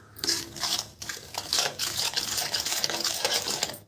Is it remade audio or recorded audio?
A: remade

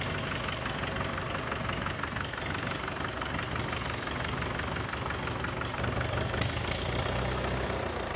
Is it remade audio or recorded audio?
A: recorded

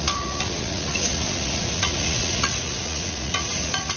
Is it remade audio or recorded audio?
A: remade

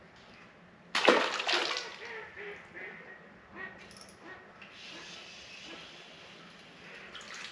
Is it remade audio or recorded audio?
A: recorded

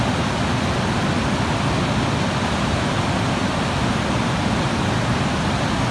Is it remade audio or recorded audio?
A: recorded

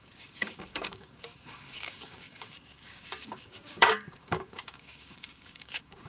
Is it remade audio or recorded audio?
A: remade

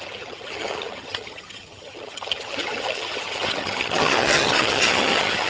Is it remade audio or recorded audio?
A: remade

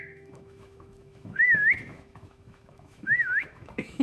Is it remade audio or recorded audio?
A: remade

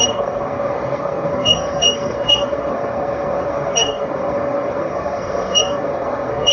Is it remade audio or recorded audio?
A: remade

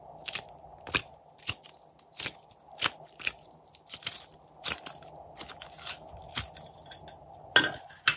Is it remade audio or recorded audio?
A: recorded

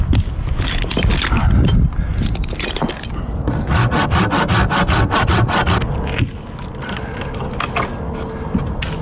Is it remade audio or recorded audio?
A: recorded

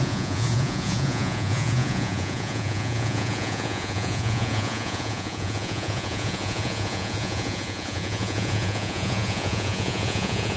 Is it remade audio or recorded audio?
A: remade